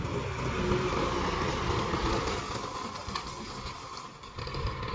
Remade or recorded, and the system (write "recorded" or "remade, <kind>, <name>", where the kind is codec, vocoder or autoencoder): recorded